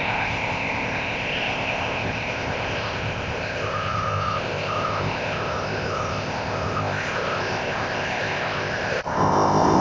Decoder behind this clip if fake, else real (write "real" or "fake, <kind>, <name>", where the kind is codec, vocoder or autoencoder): fake, codec, ZipCodec